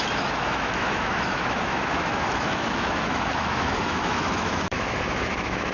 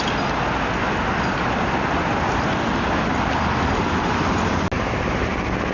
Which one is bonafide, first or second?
second